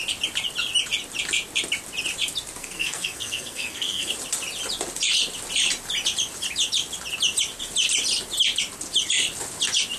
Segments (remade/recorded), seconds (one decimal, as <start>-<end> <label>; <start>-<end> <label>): 0.0-2.6 recorded; 2.6-4.1 remade; 4.1-10.0 recorded